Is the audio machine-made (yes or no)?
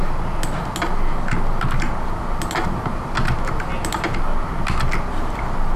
no